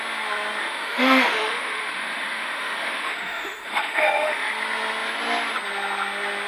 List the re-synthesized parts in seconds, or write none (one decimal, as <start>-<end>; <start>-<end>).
0.6-4.5